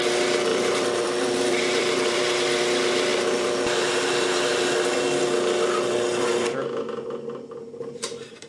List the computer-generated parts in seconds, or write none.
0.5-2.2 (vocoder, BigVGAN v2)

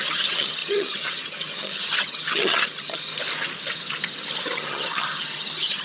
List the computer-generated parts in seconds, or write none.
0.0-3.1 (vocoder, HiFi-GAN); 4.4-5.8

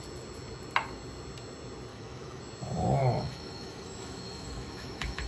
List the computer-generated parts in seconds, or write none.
1.9-2.4 (autoencoder, DAC-VAE); 3.0-5.3

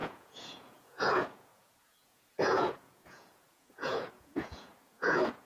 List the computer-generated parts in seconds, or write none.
0.0-5.5 (vocoder, Vocos)

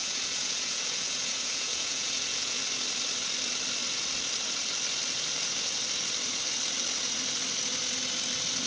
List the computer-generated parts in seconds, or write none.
0.0-2.6 (vocoder, Vocos)